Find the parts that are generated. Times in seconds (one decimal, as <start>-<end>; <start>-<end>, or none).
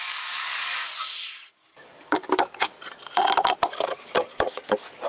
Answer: 0.0-0.8; 1.5-2.7; 3.8-5.1